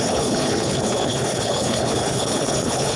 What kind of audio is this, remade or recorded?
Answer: remade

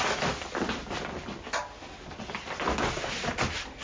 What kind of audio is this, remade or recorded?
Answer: recorded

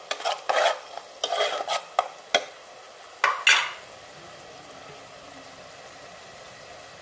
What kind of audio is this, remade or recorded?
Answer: recorded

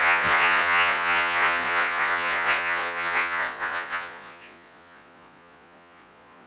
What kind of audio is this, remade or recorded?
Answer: remade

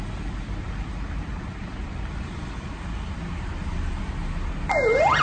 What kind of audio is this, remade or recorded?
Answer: recorded